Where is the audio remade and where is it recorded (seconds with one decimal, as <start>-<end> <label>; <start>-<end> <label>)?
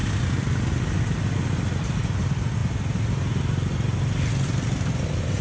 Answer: 0.0-5.4 recorded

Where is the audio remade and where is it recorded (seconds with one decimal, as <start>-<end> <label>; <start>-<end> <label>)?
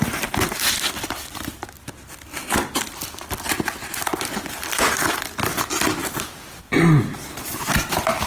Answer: 0.0-8.3 recorded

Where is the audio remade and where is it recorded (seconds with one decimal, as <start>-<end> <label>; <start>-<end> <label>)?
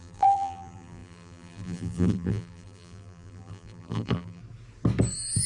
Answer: 0.0-4.4 remade; 4.4-5.5 recorded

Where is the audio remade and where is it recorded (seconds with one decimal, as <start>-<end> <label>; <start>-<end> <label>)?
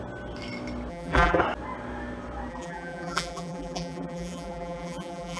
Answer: 0.0-0.9 recorded; 0.9-1.4 remade; 1.4-2.5 recorded; 2.5-5.4 remade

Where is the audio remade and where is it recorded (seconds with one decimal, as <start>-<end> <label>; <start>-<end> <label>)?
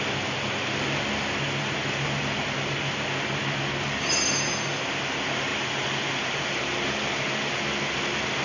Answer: 0.0-5.5 recorded; 5.5-6.4 remade; 6.4-8.4 recorded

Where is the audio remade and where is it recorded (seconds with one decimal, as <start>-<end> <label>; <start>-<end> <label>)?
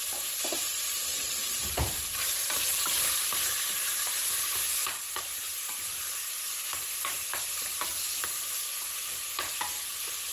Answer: 0.0-3.3 remade; 3.3-4.0 recorded; 4.0-8.7 remade; 8.7-10.3 recorded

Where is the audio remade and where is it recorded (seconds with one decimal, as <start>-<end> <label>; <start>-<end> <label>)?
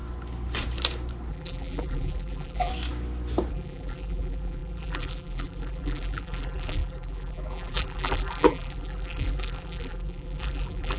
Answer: 0.0-1.3 recorded; 1.3-2.7 remade; 2.7-3.5 recorded; 3.5-11.0 remade